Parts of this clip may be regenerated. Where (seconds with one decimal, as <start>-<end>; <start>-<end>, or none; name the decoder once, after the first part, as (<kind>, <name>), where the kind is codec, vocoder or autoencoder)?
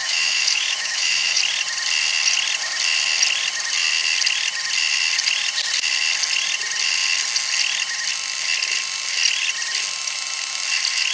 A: 0.0-1.4 (autoencoder, DAC-VAE)